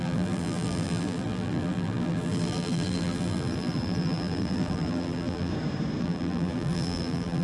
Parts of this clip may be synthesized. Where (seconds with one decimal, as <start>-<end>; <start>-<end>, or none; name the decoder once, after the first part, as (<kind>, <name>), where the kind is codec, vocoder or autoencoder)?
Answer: 0.0-5.5 (vocoder, BigVGAN v2); 6.0-7.4